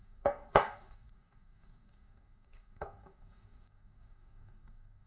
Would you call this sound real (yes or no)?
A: no